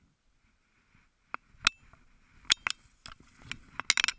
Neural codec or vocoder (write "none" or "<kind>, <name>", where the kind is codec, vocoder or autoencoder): none